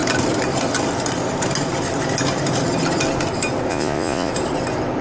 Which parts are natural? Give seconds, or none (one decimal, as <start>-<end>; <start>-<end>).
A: 0.0-3.7; 4.3-5.0